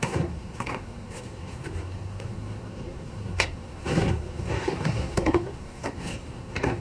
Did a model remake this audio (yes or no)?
yes